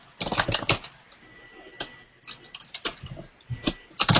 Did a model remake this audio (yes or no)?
no